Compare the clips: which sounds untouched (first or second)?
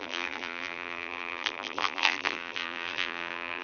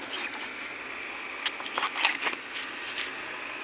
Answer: second